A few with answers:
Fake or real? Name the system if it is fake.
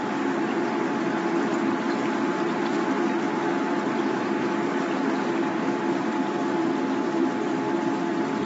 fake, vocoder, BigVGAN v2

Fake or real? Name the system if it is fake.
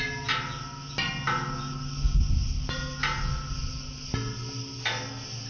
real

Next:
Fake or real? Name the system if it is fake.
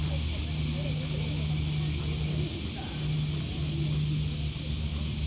real